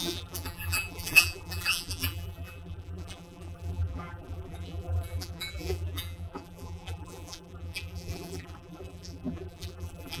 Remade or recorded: remade